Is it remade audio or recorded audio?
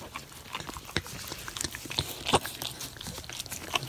recorded